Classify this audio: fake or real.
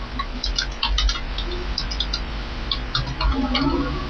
real